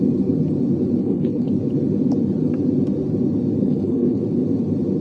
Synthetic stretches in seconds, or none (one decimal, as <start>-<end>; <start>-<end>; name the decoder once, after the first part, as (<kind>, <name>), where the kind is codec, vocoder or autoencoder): 1.0-1.5 (codec, HILCodec); 3.6-4.2